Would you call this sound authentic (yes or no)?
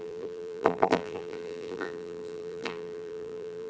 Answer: no